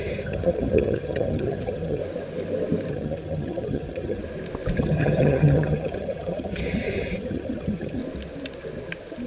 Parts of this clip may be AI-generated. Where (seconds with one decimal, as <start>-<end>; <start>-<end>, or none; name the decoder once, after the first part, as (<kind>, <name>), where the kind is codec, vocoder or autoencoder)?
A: 0.0-2.0 (vocoder, HiFi-GAN); 2.9-4.2; 4.8-8.0